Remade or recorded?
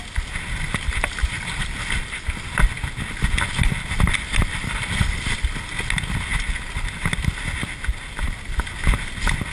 recorded